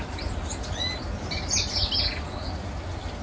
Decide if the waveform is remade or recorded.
recorded